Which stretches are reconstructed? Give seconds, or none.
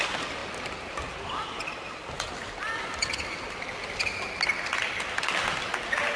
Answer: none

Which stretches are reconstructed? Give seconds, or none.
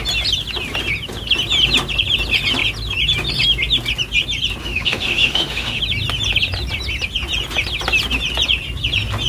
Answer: 4.6-5.8 (autoencoder, DAC-VAE)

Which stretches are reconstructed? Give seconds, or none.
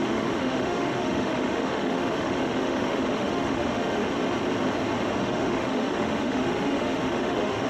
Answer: 0.0-4.0 (autoencoder, DAC-VAE); 5.2-7.7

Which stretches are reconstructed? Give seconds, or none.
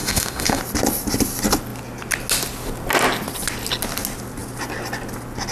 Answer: 0.0-0.6 (autoencoder, DAC-VAE)